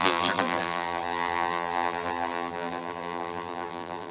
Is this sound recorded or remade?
remade